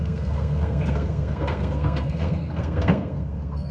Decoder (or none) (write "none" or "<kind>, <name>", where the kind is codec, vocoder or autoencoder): codec, SNAC